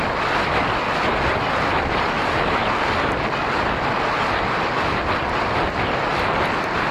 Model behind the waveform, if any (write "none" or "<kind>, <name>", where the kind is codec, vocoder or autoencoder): none